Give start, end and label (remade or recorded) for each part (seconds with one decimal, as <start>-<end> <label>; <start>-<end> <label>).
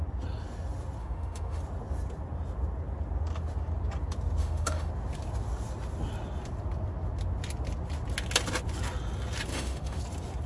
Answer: 0.0-1.0 recorded; 1.0-1.6 remade; 1.6-4.4 recorded; 4.4-4.9 remade; 4.9-9.5 recorded; 9.5-10.0 remade; 10.0-10.5 recorded